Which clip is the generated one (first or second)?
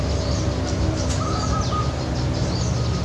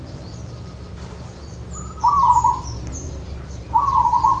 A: second